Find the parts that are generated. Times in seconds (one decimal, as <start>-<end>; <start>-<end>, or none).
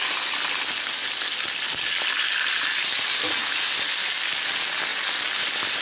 none